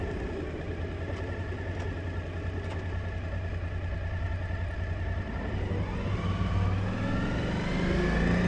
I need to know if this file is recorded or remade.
recorded